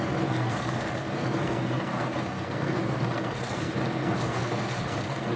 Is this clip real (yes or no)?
no